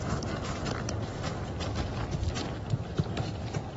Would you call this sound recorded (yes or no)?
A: yes